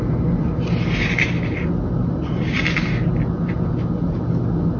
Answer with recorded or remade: recorded